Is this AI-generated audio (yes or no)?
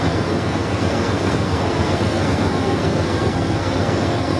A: yes